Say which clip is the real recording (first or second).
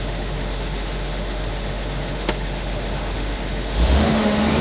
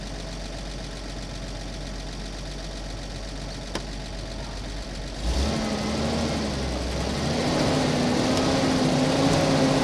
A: second